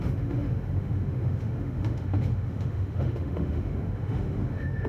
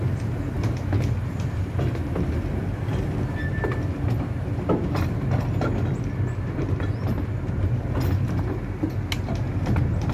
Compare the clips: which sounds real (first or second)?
second